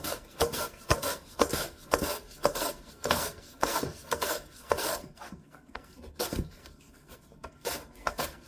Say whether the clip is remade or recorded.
remade